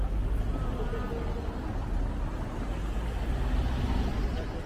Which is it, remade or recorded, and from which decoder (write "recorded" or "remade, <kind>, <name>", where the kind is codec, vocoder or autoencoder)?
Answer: recorded